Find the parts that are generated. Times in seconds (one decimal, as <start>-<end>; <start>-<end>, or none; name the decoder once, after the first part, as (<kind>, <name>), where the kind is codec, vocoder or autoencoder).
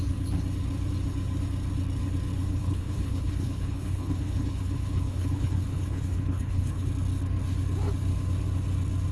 2.5-6.9 (codec, HILCodec)